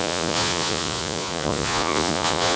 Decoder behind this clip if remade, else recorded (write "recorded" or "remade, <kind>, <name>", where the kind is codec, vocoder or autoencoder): remade, vocoder, Vocos